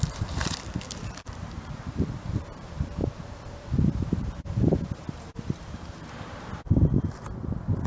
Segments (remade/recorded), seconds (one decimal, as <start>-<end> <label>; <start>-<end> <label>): 0.0-7.9 remade